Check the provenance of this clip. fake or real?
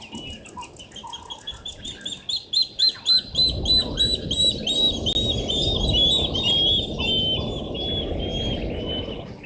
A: real